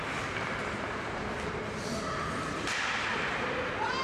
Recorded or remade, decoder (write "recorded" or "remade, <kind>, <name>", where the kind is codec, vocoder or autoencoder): recorded